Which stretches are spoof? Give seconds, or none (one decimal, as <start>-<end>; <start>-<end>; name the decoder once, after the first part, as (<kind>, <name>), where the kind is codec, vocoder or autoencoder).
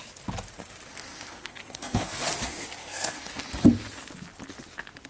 1.0-2.3 (codec, SNAC); 2.8-3.4